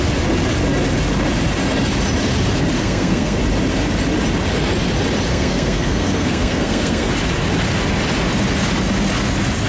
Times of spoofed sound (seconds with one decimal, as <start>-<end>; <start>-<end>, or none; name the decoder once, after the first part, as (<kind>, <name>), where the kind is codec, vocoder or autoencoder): 2.8-3.4 (codec, SNAC); 5.3-7.1